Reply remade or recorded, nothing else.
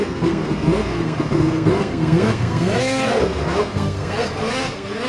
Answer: remade